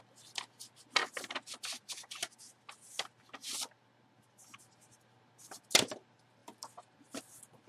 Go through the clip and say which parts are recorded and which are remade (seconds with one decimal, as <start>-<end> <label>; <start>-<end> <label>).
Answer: 0.0-7.7 recorded